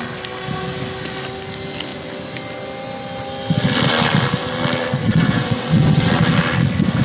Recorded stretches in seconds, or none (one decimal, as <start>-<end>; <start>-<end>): 0.0-5.0; 6.1-7.0